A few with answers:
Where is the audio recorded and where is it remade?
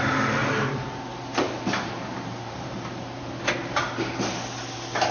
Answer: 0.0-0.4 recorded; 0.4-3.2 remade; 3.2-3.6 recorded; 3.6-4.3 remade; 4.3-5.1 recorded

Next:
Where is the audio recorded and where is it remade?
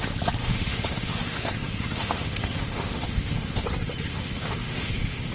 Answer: 0.0-0.4 recorded; 0.4-3.6 remade; 3.6-4.1 recorded; 4.1-5.3 remade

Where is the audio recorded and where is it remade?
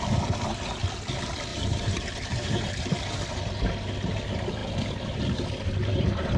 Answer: 0.0-1.5 recorded; 1.5-2.7 remade; 2.7-5.8 recorded; 5.8-6.4 remade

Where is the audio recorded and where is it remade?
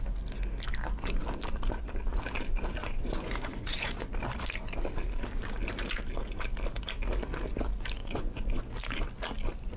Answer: 0.0-2.8 recorded; 2.8-4.1 remade; 4.1-8.0 recorded; 8.0-8.6 remade; 8.6-9.8 recorded